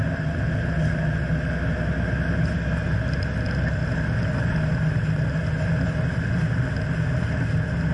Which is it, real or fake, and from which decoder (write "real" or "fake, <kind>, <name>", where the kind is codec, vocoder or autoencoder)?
real